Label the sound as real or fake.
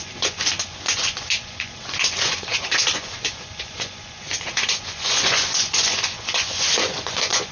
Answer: fake